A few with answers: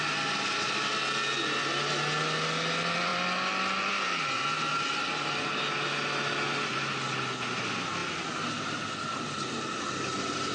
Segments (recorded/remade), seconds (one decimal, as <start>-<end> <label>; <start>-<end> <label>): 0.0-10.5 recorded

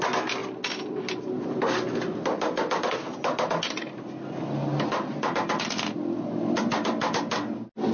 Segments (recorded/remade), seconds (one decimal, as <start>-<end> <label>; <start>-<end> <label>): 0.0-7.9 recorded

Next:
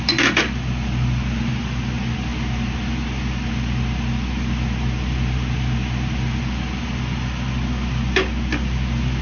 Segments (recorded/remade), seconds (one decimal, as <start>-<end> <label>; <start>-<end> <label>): 0.0-9.2 recorded